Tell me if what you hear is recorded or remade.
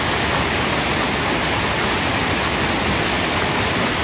recorded